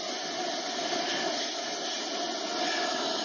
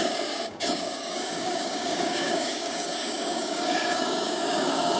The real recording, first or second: first